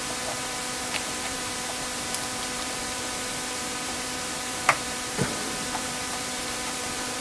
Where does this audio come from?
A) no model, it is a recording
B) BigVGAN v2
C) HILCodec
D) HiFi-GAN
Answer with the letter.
B